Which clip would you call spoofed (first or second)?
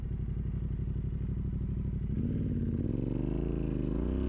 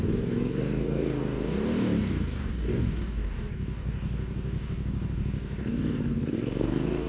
second